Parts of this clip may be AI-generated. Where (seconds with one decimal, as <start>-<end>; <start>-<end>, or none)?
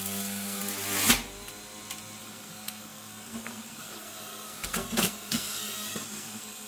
0.0-0.6; 2.2-6.7